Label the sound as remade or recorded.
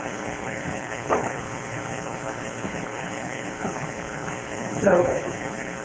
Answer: remade